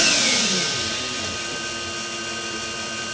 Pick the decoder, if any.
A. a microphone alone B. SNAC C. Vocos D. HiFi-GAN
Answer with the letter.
A